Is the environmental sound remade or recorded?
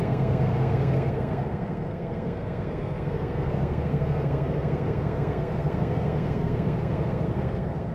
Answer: remade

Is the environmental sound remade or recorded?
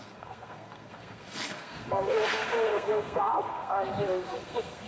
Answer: remade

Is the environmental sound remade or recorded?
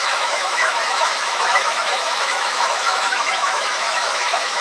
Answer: remade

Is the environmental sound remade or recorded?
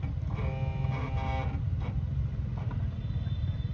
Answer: recorded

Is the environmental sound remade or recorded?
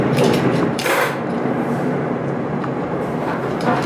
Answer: remade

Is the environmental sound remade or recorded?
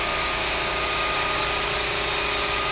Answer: recorded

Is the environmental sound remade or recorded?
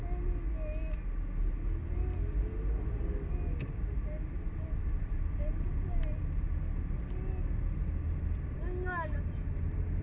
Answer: recorded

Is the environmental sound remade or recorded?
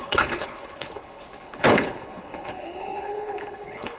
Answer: remade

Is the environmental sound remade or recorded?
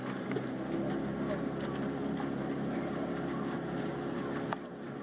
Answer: recorded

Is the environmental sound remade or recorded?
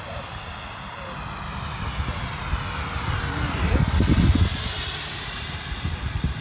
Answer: recorded